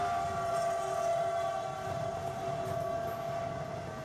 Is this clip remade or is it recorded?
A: recorded